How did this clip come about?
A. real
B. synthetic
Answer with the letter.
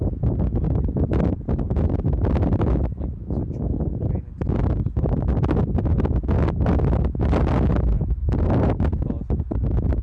A